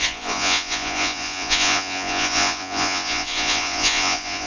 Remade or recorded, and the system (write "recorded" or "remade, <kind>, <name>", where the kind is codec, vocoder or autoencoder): remade, vocoder, Vocos